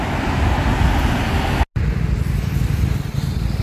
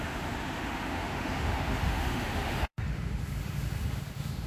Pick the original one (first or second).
first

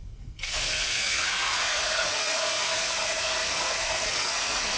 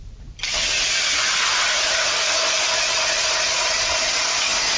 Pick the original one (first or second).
second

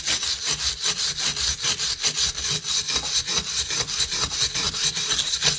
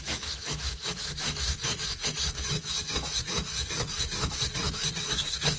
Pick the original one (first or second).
first